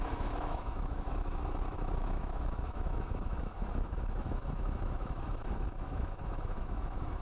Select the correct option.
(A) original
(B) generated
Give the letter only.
B